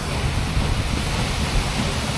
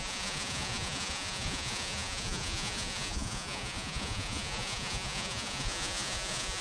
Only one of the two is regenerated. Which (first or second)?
second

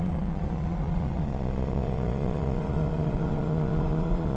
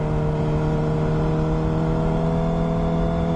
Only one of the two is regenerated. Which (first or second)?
first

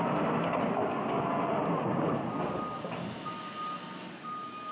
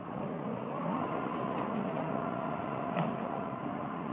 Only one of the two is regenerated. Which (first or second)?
second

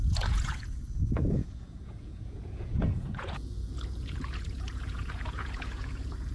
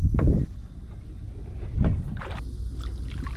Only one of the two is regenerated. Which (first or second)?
first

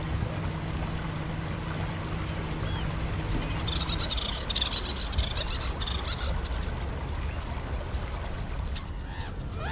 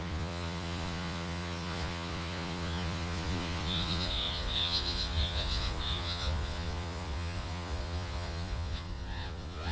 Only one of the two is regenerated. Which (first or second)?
second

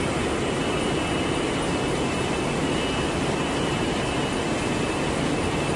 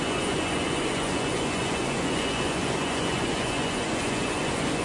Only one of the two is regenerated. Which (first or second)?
second